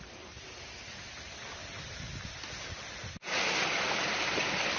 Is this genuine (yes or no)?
yes